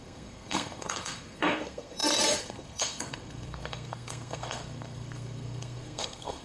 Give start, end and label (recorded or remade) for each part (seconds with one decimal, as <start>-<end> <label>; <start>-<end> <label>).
0.0-6.4 remade